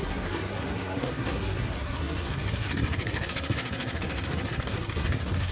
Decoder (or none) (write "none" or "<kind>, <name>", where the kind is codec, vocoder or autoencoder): codec, SNAC